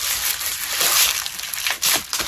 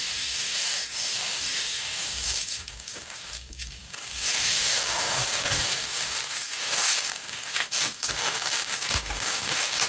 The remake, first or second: second